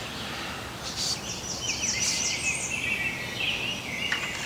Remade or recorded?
recorded